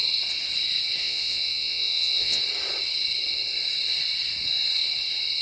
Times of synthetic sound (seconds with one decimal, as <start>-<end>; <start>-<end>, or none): 1.0-2.4